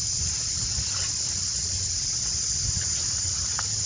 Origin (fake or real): real